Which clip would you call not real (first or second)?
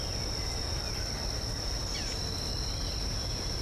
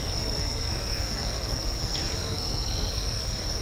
second